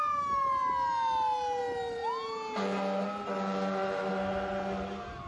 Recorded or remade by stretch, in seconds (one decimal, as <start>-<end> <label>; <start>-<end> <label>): 0.0-5.3 recorded